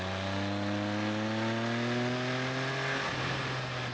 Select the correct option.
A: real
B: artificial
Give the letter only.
A